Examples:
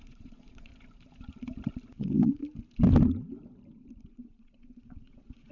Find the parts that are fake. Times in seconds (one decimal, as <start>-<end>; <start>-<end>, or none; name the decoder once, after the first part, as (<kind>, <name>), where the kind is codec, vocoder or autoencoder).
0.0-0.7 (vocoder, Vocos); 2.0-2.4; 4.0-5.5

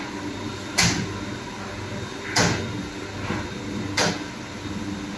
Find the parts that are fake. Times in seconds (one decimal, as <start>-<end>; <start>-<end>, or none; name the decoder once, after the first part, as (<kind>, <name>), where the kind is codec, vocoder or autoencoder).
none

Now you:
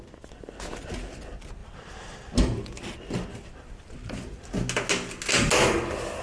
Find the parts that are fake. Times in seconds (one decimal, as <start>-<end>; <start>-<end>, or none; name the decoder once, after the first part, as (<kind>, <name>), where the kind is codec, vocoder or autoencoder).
none

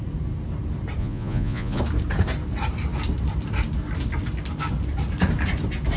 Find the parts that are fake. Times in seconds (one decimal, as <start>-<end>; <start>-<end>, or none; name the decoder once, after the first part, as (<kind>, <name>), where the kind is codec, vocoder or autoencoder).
1.0-1.8 (vocoder, Vocos)

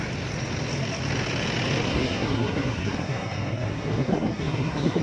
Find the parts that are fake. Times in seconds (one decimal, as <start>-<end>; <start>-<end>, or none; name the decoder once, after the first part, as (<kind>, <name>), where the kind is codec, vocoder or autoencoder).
1.9-5.0 (codec, SNAC)